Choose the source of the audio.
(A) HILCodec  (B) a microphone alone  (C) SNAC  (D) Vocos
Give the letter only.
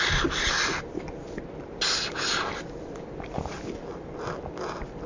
B